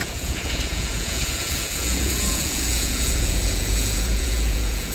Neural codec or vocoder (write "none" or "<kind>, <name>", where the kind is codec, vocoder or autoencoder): vocoder, Vocos